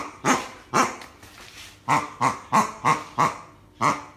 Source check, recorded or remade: recorded